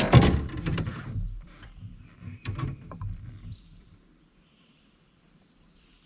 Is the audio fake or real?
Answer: fake